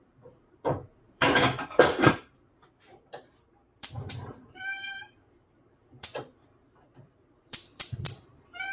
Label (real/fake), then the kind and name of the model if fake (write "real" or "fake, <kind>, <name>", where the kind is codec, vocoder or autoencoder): fake, vocoder, BigVGAN v2